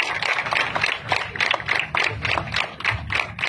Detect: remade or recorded recorded